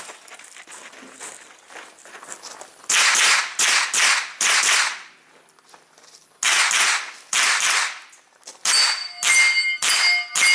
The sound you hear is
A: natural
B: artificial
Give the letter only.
A